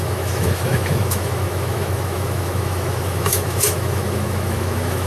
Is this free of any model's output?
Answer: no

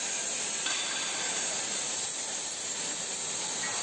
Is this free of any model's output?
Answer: yes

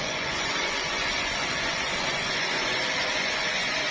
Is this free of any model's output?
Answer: no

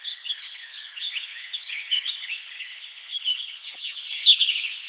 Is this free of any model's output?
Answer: no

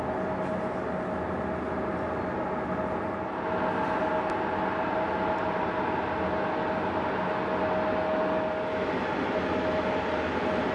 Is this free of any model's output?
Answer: yes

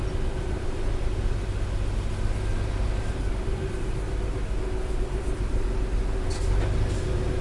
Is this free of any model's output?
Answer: yes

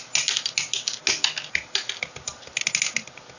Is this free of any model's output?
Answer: yes